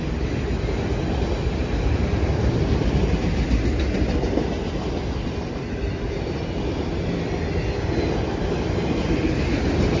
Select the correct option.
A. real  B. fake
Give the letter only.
A